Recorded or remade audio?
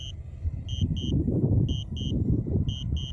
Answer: recorded